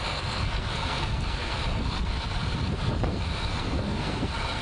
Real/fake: fake